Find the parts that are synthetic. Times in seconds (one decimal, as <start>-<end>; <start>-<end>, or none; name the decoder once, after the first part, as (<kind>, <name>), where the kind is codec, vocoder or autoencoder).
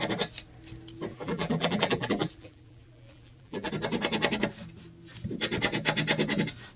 1.1-3.7 (vocoder, BigVGAN v2)